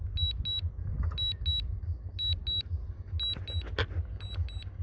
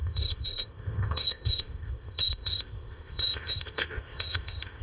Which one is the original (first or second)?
first